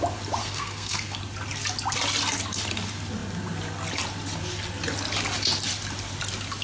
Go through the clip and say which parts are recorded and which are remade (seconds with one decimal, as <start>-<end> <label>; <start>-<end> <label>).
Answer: 0.0-0.4 recorded; 0.4-1.2 remade; 1.2-6.6 recorded